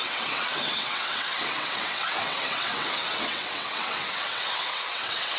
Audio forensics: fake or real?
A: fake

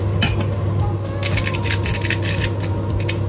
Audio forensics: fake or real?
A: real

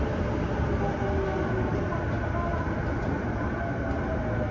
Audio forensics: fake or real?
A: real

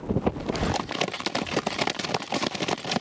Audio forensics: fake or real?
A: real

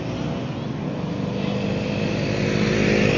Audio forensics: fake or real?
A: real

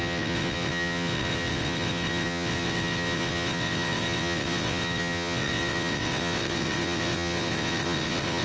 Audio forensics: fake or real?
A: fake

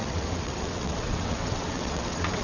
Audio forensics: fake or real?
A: fake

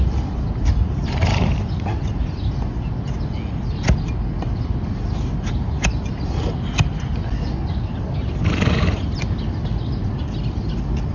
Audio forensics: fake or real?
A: real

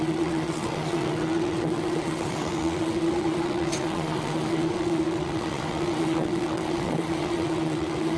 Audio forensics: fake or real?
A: fake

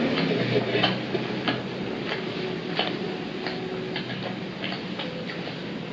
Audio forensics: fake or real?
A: real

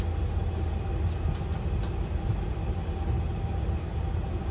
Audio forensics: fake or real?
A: real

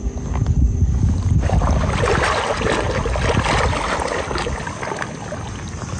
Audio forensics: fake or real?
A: real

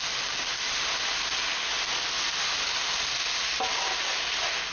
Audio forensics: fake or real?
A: real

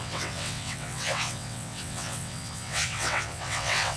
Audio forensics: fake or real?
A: fake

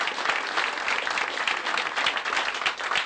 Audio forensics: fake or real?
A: real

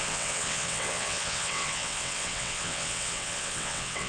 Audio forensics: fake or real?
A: fake